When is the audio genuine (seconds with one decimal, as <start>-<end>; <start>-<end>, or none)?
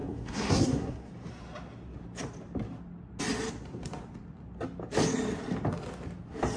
1.1-6.6